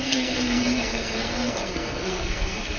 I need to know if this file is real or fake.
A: fake